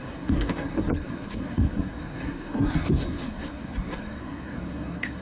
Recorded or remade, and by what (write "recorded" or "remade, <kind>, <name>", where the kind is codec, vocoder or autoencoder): remade, codec, SNAC